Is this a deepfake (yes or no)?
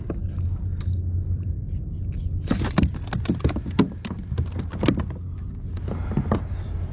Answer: no